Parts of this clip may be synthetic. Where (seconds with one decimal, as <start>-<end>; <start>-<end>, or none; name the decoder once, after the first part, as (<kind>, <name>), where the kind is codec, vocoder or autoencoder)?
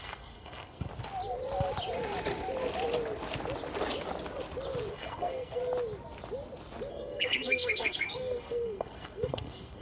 0.0-0.9 (codec, SNAC); 4.9-5.6; 6.9-9.8